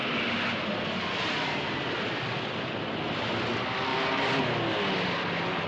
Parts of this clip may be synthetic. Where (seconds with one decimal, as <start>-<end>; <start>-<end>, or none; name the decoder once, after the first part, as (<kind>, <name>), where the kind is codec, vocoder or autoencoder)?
3.9-4.4 (vocoder, BigVGAN v2)